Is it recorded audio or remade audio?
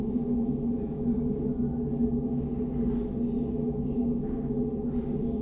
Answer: recorded